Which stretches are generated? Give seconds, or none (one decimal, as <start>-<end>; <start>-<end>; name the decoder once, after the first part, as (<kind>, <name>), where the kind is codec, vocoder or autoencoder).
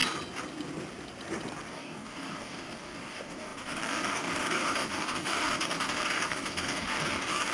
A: 1.7-7.5 (codec, DAC)